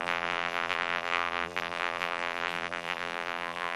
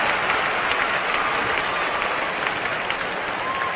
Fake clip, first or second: first